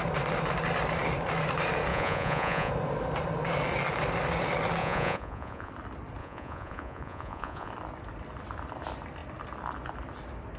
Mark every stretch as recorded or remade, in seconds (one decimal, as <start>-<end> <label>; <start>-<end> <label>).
0.0-1.9 recorded; 1.9-2.7 remade; 2.7-4.8 recorded; 4.8-5.7 remade; 5.7-6.2 recorded; 6.2-7.7 remade; 7.7-10.6 recorded